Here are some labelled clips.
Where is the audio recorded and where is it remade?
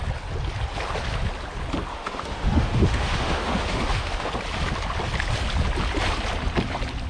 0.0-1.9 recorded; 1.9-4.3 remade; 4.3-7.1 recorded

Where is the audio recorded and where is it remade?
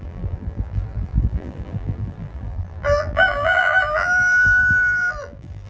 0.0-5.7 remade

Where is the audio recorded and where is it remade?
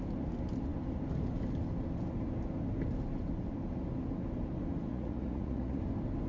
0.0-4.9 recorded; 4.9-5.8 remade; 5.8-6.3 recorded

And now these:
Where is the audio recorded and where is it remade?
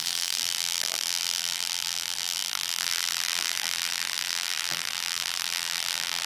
0.0-6.3 remade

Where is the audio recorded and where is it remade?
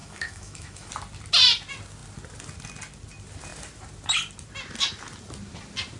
0.0-0.9 remade; 0.9-6.0 recorded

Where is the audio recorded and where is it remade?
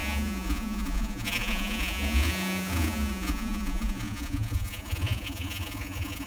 0.0-6.3 remade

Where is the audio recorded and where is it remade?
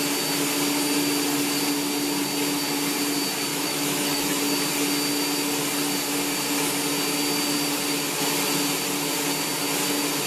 0.0-3.5 recorded; 3.5-4.4 remade; 4.4-10.3 recorded